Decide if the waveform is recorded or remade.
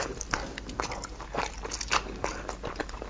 recorded